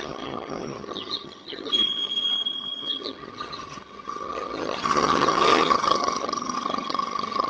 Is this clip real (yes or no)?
no